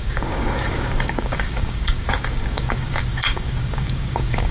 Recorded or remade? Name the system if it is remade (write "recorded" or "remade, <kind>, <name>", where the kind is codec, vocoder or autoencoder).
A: remade, codec, DAC